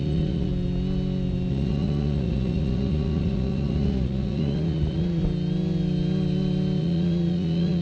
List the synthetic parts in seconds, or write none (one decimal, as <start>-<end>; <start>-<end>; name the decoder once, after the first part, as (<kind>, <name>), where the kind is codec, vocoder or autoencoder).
0.0-0.5 (vocoder, Vocos); 1.5-5.2; 6.8-7.8